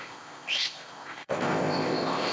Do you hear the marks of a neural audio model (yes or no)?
yes